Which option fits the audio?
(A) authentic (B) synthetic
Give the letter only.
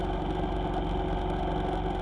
A